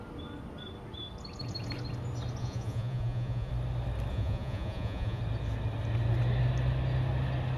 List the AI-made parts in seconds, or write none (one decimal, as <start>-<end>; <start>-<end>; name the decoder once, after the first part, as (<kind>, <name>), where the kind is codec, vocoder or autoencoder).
2.4-3.5 (vocoder, Vocos); 4.1-5.2